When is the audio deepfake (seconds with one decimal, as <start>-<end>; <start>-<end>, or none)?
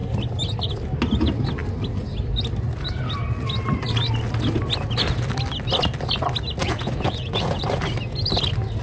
6.6-7.6